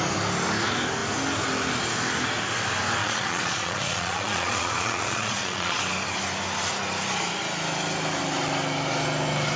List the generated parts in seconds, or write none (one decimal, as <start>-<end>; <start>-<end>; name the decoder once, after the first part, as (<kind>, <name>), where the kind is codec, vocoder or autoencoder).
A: 3.0-5.8 (vocoder, Vocos)

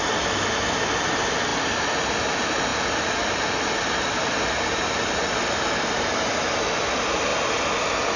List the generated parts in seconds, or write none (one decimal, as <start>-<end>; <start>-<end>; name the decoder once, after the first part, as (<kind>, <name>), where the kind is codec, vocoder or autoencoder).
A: none